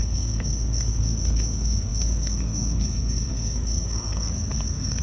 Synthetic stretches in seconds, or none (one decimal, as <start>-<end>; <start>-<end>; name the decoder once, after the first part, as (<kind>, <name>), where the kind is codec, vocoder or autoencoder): 0.0-5.0 (codec, SNAC)